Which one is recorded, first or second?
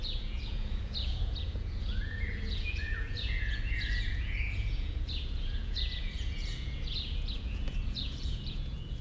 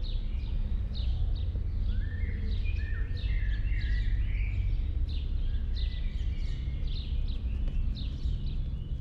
second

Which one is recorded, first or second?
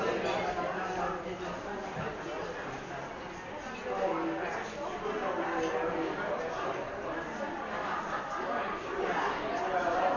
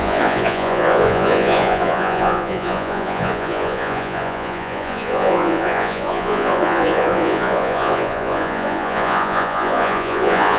first